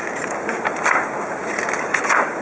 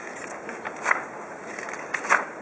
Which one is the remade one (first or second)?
second